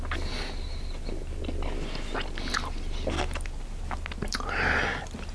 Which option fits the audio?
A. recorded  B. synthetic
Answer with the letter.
A